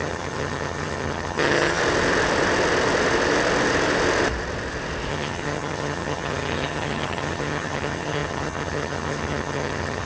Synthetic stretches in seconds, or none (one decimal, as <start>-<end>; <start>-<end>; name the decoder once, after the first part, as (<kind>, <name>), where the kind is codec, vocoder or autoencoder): 0.0-1.8 (vocoder, HiFi-GAN); 5.1-10.1